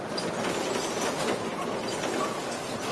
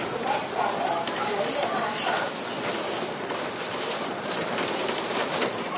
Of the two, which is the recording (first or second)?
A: first